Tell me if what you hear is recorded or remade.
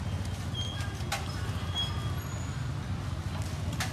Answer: recorded